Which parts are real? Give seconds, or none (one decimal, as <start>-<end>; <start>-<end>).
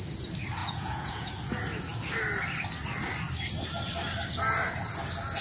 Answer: 0.0-0.6; 1.3-5.4